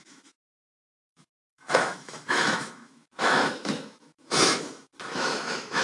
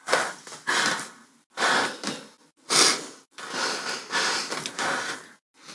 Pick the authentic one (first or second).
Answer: second